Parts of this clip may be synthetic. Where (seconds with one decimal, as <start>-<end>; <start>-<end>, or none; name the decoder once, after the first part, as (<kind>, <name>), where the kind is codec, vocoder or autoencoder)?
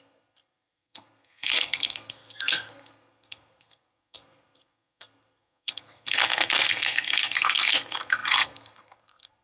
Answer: 0.0-9.4 (codec, SNAC)